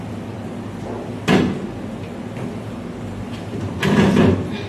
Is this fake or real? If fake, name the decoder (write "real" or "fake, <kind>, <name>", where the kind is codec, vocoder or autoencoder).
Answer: real